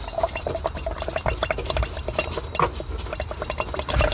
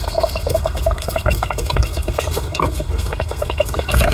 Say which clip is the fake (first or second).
second